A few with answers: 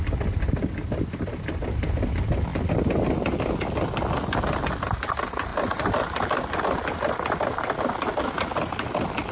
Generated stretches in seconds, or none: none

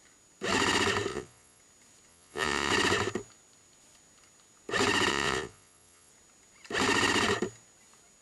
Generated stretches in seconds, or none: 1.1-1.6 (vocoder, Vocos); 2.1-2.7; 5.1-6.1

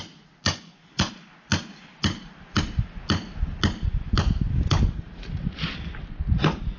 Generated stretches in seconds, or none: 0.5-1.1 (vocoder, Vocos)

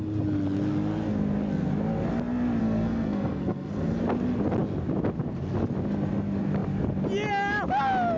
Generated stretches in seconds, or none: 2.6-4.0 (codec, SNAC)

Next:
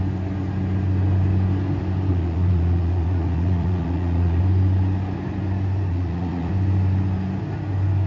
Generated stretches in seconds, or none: 2.1-4.4 (vocoder, Vocos); 5.9-6.5

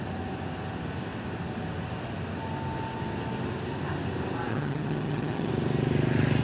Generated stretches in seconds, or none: 4.5-5.5 (vocoder, HiFi-GAN)

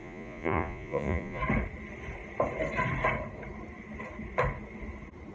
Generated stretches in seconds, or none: 0.0-1.4 (vocoder, Vocos)

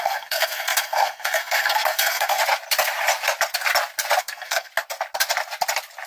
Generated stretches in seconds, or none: 0.0-2.4 (codec, SNAC); 4.2-4.7